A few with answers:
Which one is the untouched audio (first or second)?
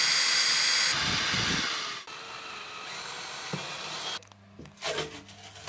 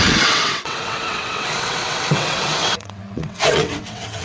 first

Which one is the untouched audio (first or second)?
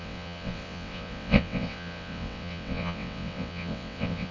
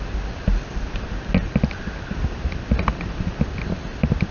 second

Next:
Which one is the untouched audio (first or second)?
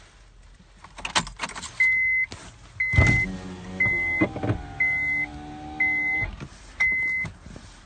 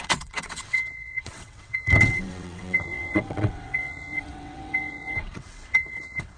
first